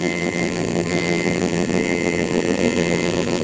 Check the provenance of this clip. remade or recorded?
remade